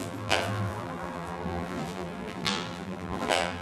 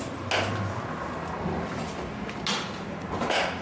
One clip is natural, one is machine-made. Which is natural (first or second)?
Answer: second